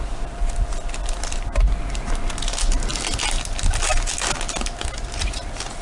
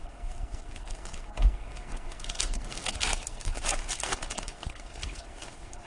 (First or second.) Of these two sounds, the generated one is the second